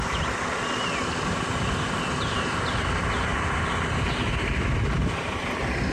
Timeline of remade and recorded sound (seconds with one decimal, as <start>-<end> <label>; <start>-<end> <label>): 0.0-5.9 recorded